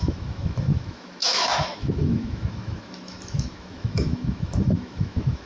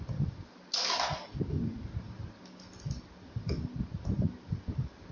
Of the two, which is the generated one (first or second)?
first